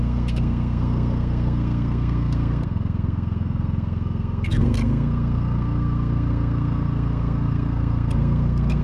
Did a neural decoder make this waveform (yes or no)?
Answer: yes